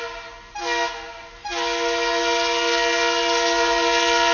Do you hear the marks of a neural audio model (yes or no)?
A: no